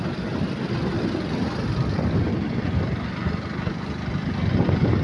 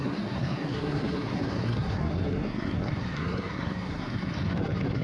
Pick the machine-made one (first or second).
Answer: second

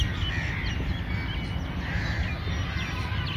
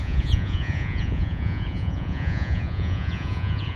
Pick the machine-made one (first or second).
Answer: second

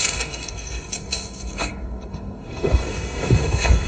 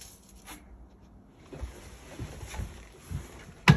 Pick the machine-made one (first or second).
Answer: first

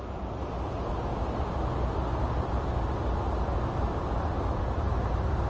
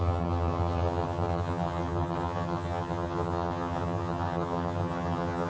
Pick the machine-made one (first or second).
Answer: second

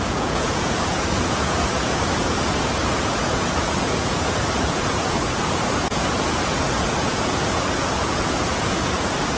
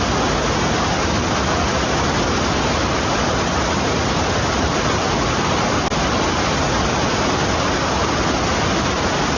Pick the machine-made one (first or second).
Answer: first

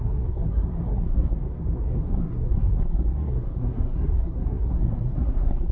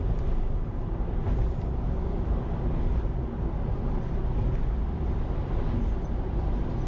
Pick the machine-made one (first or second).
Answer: first